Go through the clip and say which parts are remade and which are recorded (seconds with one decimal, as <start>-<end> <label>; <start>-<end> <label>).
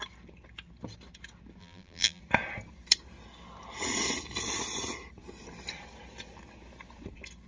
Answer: 0.0-1.6 recorded; 1.6-2.2 remade; 2.2-7.5 recorded